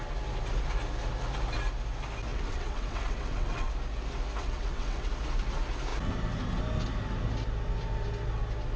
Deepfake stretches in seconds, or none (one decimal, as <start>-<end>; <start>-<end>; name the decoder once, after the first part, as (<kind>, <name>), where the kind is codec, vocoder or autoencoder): 2.3-3.7 (vocoder, WaveNeXt); 4.4-5.1